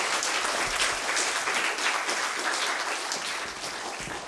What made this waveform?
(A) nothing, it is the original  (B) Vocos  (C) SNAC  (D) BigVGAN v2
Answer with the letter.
A